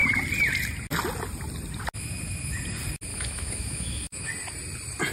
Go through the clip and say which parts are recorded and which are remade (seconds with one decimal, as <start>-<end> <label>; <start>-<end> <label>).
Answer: 0.0-3.1 recorded; 3.1-4.3 remade; 4.3-5.1 recorded